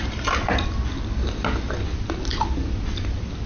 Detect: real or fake real